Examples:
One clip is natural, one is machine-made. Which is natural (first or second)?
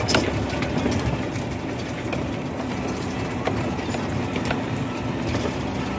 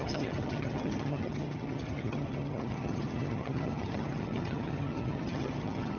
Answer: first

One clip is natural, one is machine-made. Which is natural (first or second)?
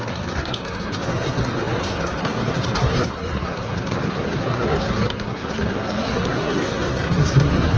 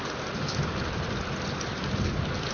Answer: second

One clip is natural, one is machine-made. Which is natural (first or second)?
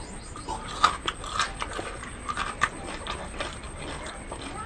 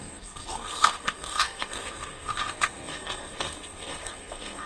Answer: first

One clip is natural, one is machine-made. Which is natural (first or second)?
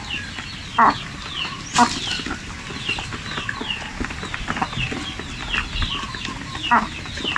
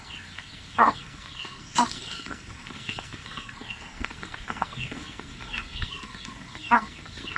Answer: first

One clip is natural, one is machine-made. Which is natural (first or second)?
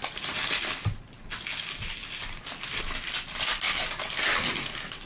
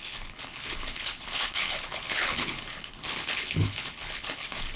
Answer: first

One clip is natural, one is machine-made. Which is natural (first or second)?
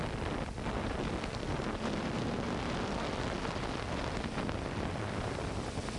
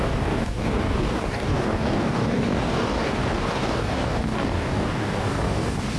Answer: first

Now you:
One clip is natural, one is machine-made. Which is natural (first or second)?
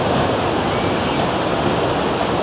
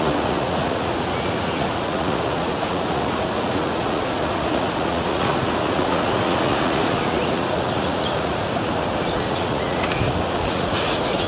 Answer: first